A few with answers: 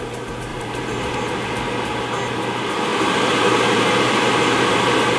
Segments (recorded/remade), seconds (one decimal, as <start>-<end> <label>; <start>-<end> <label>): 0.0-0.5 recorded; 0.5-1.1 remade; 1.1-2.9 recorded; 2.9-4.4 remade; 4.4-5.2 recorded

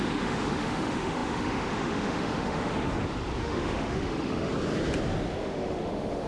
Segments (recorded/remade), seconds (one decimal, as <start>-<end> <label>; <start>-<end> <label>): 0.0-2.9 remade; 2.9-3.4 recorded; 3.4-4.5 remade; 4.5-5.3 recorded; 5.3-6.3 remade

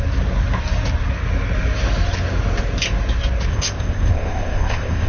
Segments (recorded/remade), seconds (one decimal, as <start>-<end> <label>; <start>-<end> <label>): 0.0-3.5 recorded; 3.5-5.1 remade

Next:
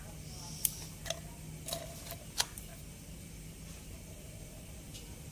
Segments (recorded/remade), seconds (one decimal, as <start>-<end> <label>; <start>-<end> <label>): 0.0-5.3 recorded